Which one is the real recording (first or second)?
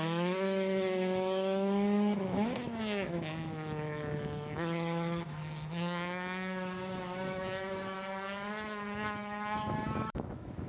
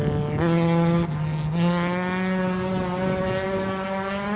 second